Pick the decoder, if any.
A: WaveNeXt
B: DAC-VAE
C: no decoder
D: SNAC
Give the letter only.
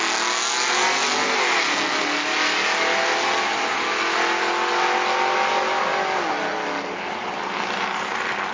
C